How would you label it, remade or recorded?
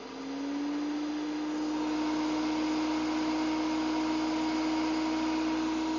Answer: recorded